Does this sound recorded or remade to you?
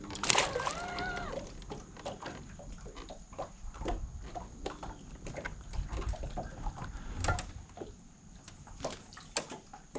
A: recorded